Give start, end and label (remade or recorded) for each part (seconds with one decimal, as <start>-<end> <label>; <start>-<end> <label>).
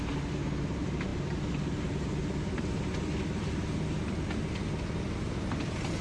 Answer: 0.0-6.0 recorded